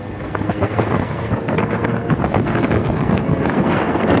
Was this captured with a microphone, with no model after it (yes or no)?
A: no